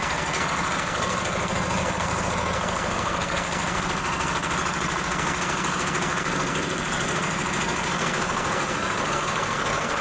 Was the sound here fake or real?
fake